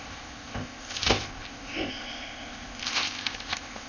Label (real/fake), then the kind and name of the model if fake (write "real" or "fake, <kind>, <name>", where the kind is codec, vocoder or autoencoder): fake, codec, ZipCodec